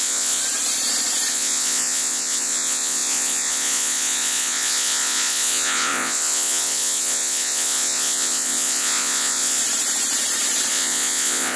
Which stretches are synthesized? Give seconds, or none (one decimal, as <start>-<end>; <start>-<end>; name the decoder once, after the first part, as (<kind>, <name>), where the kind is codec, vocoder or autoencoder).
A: 0.0-0.4 (vocoder, Vocos); 1.3-9.6; 10.7-11.6